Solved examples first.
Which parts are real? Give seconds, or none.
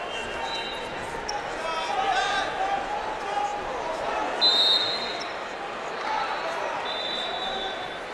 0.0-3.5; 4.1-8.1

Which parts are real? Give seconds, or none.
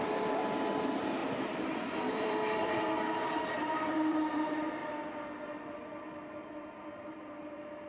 1.2-1.9; 4.8-7.4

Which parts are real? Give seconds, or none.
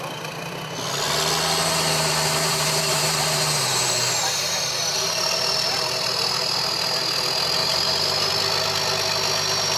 0.0-2.4; 3.9-7.6; 8.3-9.8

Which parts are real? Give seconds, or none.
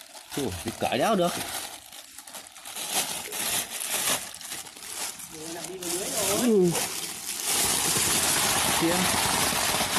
0.0-4.7; 5.7-10.0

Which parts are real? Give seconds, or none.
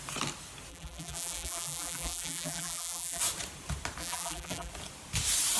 0.0-0.7; 3.2-4.0; 4.7-5.6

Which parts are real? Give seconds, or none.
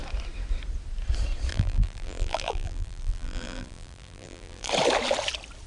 0.0-1.5; 4.7-5.7